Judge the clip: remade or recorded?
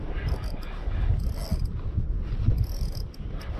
recorded